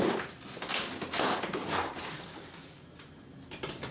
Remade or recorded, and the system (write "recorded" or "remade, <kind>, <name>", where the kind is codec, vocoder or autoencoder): recorded